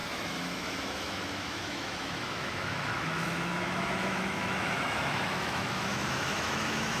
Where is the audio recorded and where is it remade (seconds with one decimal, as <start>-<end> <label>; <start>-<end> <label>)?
0.0-7.0 remade